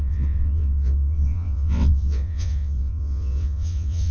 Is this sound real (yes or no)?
no